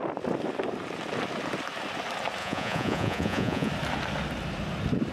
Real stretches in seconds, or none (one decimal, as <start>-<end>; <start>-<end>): 0.0-2.4; 3.7-5.1